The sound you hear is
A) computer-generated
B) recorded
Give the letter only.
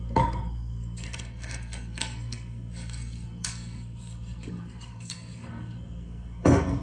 A